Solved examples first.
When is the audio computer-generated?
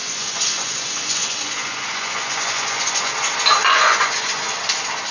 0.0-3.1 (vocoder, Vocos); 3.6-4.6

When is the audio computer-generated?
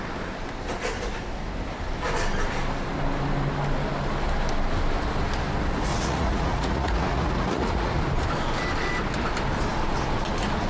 5.9-8.0 (vocoder, Vocos)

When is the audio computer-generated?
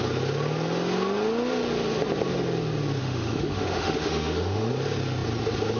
3.0-4.7 (autoencoder, DAC-VAE)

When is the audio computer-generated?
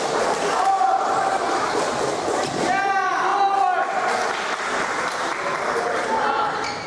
none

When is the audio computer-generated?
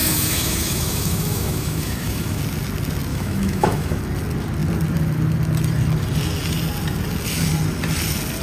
0.0-2.4 (autoencoder, DAC-VAE); 3.1-4.0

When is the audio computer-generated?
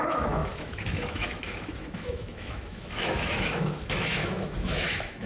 0.0-5.3 (autoencoder, DAC-VAE)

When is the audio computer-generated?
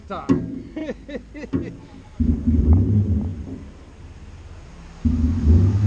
none